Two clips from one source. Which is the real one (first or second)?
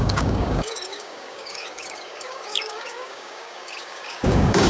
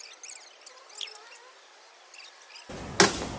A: second